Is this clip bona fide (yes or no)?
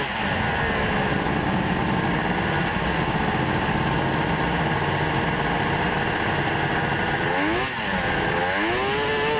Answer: yes